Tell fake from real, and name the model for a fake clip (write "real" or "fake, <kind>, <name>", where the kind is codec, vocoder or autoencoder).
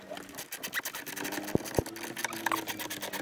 real